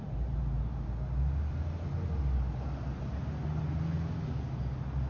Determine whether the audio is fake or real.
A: real